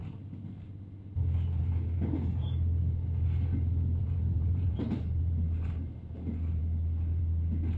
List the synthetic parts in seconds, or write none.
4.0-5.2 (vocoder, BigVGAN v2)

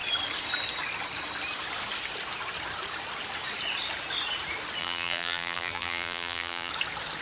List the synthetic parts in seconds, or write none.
4.8-6.7 (vocoder, BigVGAN v2)

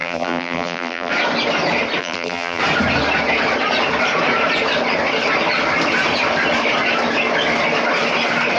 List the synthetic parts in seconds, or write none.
0.0-1.1 (vocoder, BigVGAN v2); 2.0-2.6